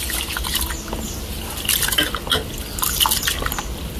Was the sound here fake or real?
real